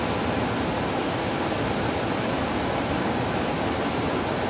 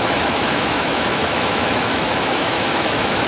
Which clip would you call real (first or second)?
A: first